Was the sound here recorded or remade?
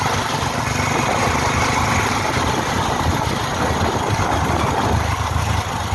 recorded